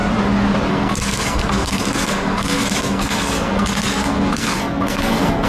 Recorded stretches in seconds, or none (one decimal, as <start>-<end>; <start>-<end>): 0.0-0.7